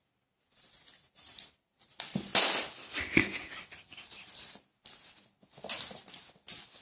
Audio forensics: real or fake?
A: real